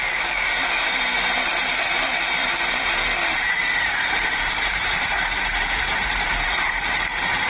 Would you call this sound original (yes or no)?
no